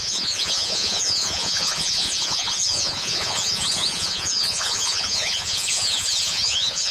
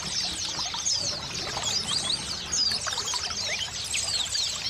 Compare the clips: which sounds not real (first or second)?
first